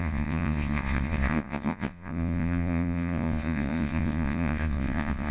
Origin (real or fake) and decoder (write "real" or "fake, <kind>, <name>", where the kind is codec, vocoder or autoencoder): fake, vocoder, Vocos